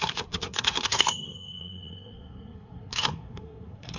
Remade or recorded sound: remade